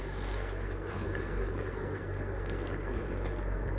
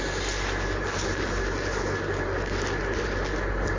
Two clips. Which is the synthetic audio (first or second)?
first